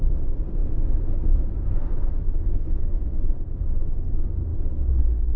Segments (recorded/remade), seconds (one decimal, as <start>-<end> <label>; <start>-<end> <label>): 0.0-5.4 recorded